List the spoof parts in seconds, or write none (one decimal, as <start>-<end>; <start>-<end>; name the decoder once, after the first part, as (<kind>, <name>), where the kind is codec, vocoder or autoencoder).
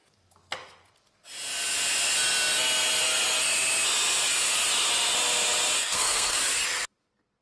5.8-6.4 (codec, SNAC)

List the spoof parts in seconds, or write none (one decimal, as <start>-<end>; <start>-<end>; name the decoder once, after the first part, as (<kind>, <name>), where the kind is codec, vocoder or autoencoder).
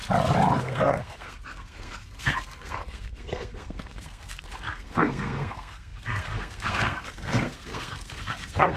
0.6-8.8 (codec, SNAC)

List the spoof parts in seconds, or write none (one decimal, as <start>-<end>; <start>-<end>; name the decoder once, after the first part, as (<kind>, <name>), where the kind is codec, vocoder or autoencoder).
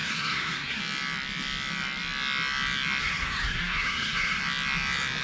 0.0-0.8 (codec, SNAC); 3.0-4.4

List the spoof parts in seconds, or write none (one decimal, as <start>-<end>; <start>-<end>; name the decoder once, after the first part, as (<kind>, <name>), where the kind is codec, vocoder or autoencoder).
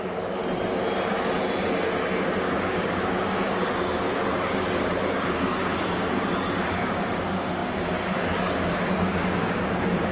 0.0-0.4 (codec, DAC); 2.2-10.1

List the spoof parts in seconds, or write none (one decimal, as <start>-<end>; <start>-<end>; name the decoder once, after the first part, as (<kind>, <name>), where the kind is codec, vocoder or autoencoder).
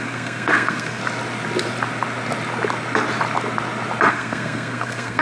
0.0-1.0 (codec, SNAC); 4.1-5.2